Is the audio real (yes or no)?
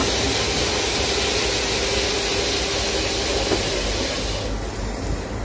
yes